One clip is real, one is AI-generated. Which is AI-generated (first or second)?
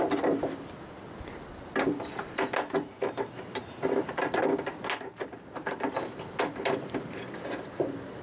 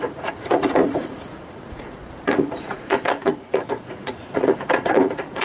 second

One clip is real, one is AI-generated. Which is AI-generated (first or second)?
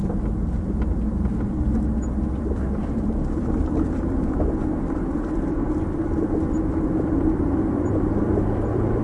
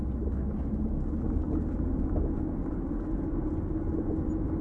first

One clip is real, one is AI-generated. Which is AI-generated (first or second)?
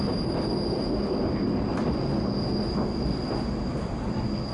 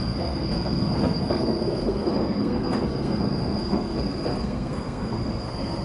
second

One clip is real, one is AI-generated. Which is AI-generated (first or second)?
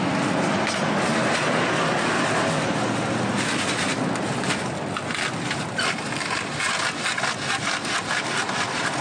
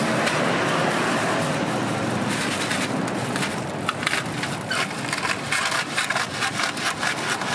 second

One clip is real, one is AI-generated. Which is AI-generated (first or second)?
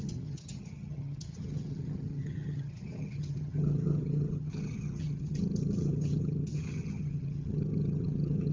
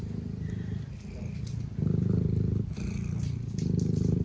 first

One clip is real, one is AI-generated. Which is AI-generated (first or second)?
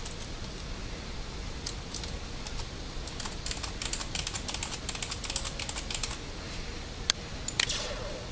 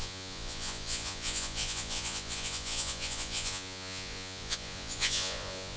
second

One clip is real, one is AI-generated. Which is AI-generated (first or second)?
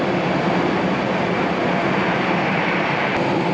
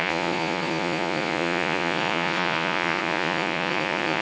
second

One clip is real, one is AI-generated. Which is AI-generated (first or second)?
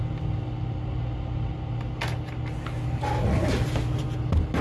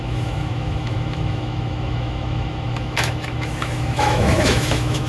second